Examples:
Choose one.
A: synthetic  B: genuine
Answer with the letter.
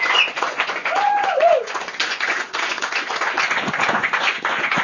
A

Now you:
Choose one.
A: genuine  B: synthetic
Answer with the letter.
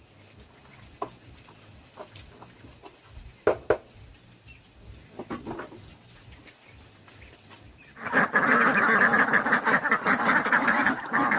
A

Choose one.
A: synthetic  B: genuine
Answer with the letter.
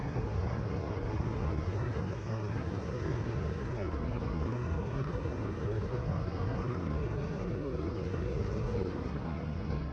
A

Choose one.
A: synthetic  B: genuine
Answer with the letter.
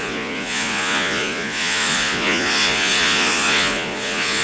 A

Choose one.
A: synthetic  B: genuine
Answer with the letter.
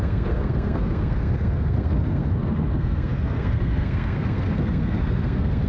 A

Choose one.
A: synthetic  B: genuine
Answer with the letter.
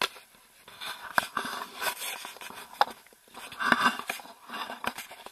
B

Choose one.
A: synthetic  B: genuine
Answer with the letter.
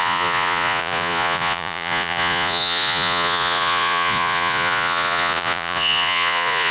A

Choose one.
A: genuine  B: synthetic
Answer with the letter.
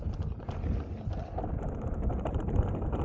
A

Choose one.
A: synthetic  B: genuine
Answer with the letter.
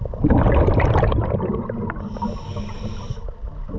B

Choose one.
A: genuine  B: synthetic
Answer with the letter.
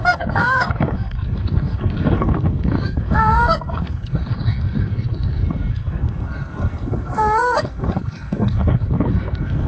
B